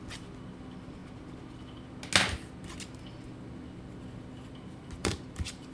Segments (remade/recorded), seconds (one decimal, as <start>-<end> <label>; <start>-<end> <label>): 0.0-5.0 recorded; 5.0-5.7 remade